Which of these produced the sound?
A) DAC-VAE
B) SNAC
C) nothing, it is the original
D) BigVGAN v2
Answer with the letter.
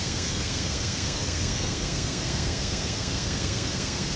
B